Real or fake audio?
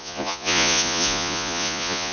fake